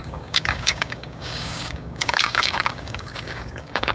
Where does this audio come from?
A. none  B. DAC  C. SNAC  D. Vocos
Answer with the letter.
B